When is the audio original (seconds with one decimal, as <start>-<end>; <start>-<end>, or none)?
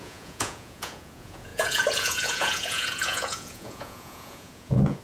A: none